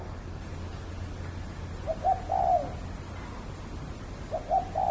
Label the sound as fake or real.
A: real